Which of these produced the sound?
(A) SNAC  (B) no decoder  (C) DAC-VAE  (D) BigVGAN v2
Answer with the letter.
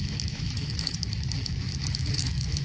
C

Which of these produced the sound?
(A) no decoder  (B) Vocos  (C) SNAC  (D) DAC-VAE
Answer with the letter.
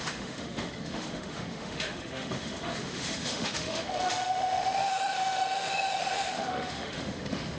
D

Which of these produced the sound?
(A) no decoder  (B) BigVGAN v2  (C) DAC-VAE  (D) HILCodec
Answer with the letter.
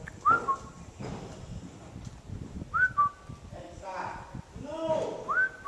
A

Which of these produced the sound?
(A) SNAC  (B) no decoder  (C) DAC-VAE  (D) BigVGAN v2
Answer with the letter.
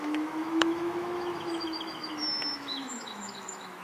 C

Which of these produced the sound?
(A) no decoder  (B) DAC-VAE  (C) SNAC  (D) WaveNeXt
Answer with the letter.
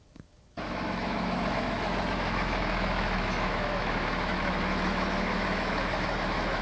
B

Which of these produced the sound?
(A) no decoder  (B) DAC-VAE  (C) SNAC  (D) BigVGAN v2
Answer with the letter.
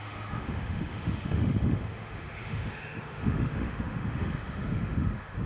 B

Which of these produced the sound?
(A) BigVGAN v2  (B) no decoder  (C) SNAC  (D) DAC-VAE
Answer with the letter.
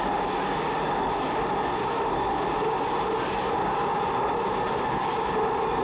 B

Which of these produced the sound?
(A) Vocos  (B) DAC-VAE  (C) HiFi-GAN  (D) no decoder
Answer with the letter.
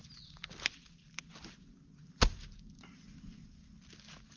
D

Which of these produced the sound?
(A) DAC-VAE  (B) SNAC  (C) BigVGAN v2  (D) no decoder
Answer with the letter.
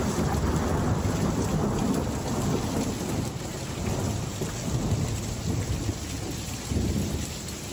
D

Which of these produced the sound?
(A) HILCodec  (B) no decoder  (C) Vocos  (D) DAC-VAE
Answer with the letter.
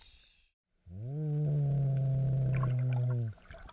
B